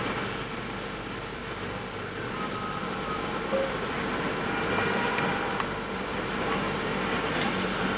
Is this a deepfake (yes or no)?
no